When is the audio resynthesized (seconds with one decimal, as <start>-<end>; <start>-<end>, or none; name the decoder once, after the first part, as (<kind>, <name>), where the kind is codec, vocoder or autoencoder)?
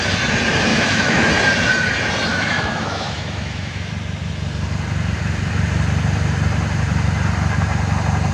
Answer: 0.7-1.3 (autoencoder, DAC-VAE); 2.3-3.9